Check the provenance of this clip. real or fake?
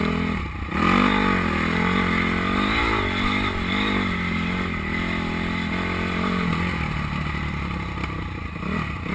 real